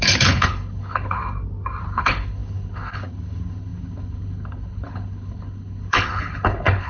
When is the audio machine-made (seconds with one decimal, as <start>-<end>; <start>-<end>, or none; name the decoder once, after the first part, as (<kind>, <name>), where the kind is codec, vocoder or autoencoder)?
0.0-1.2 (codec, HILCodec); 1.8-6.9